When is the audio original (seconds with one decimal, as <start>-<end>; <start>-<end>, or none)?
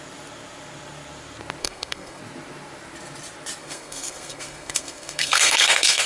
0.0-1.6; 2.2-3.6